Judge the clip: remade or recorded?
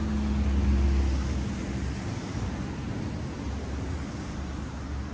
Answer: recorded